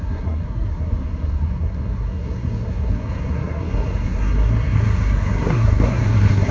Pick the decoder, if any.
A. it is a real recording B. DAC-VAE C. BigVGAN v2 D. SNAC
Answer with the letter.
D